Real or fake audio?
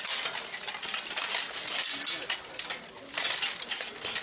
real